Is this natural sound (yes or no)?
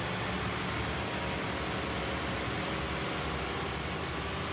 yes